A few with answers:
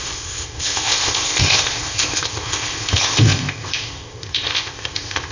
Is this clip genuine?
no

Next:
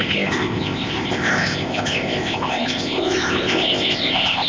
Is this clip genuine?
no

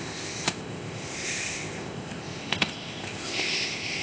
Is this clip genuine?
no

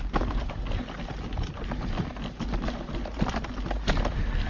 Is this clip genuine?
yes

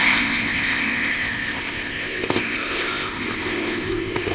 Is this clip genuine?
no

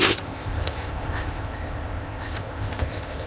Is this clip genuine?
no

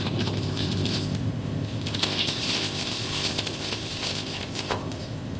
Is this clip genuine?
no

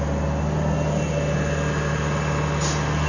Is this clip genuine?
yes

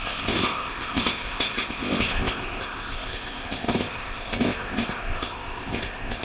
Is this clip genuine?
no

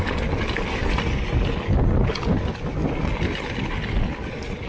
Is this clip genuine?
yes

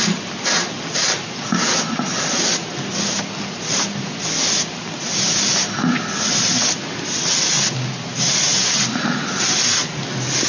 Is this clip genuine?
yes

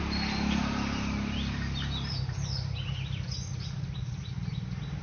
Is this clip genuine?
yes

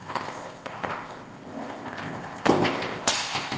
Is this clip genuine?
no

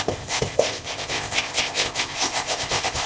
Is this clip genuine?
no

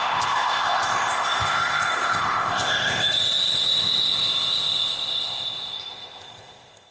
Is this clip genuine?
no